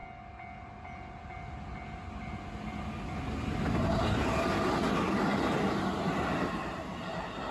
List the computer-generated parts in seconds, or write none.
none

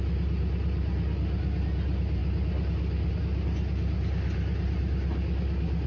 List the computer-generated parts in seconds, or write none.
none

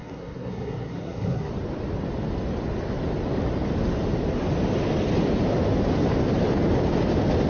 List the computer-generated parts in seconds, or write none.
0.0-1.5 (codec, SNAC)

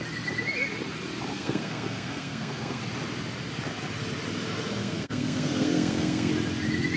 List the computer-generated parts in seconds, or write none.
1.3-2.8 (codec, SNAC); 4.8-6.3

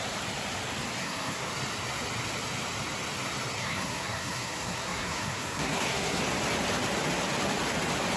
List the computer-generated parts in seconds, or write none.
1.0-1.5 (codec, SNAC); 3.6-6.2

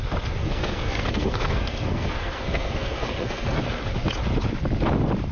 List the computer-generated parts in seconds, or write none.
0.4-3.6 (codec, SNAC)